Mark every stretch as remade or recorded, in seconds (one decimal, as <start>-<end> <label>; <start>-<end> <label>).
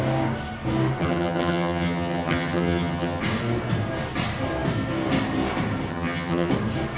0.0-1.0 recorded; 1.0-3.2 remade; 3.2-5.9 recorded; 5.9-6.5 remade; 6.5-7.0 recorded